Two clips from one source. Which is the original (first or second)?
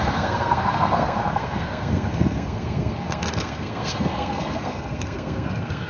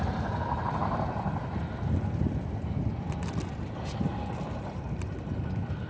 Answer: second